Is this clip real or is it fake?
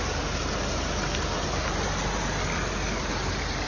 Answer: real